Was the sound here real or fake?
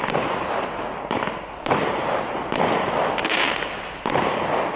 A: real